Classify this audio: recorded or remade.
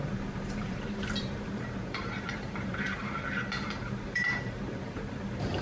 remade